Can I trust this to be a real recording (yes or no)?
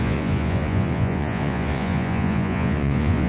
no